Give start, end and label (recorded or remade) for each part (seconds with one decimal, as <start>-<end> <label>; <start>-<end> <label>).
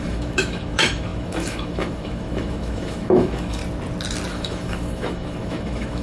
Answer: 0.0-3.6 remade; 3.6-4.3 recorded; 4.3-6.0 remade